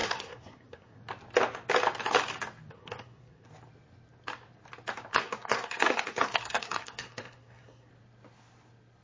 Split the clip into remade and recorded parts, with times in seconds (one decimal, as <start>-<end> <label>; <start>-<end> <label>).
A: 0.0-1.0 remade; 1.0-2.7 recorded; 2.7-3.5 remade; 3.5-5.1 recorded; 5.1-7.9 remade; 7.9-9.0 recorded